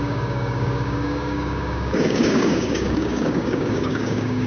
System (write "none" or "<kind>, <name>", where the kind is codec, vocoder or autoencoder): codec, DAC